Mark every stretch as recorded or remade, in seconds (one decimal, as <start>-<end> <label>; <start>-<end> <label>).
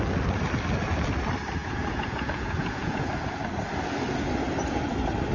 0.0-1.6 recorded; 1.6-3.1 remade; 3.1-5.3 recorded